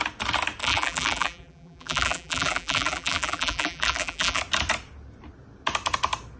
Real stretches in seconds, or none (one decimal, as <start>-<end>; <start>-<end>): 0.0-0.6; 4.4-6.4